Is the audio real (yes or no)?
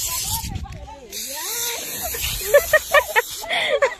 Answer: yes